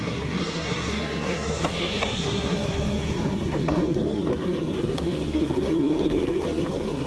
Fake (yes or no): yes